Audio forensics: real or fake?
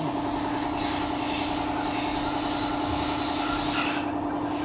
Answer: real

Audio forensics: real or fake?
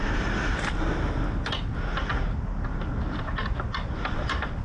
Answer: real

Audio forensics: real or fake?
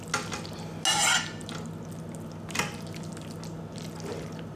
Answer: real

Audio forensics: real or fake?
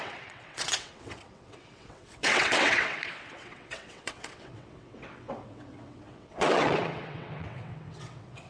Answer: fake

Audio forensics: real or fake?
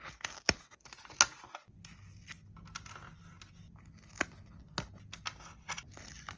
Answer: real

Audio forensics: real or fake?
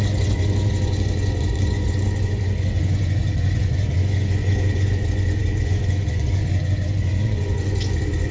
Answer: fake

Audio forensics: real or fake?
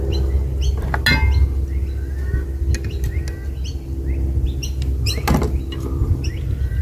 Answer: real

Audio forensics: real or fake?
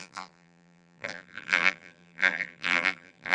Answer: fake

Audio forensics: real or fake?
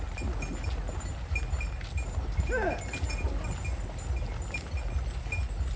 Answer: real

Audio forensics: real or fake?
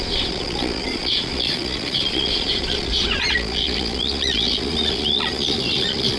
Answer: fake